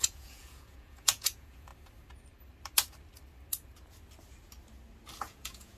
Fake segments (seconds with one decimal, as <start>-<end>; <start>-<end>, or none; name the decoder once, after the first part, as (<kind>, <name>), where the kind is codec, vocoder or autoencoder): 0.0-1.7 (vocoder, Vocos); 5.2-5.8

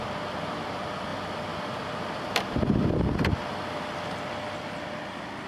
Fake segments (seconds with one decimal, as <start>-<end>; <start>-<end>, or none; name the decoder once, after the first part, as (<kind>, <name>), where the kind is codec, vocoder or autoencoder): none

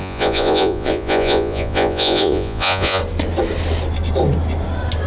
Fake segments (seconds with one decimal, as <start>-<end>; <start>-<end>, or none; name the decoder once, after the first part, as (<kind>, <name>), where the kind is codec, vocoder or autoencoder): 0.0-3.0 (vocoder, Vocos)

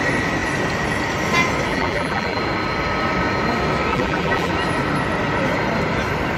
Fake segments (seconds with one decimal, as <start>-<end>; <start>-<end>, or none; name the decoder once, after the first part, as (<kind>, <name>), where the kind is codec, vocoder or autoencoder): 1.7-2.4 (vocoder, BigVGAN v2); 3.9-4.5

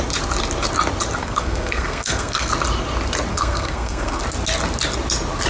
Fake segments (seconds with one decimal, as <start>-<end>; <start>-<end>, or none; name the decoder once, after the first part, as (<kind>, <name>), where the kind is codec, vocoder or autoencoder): 1.2-2.5 (codec, SNAC); 3.3-4.2

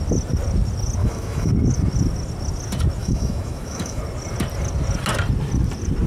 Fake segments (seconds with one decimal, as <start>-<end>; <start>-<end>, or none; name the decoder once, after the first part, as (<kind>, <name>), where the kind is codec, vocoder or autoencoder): 1.0-1.5 (autoencoder, DAC-VAE); 3.0-4.0

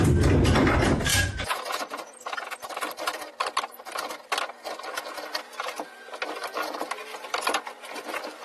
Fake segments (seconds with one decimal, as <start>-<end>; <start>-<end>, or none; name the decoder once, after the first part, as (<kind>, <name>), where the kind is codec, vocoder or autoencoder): 1.1-2.7 (vocoder, Vocos)